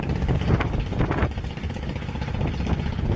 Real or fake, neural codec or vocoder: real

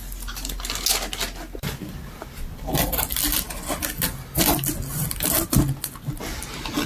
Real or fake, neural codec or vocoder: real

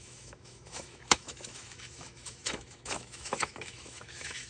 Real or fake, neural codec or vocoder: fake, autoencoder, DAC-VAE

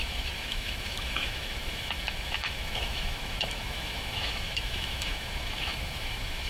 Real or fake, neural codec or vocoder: fake, autoencoder, DAC-VAE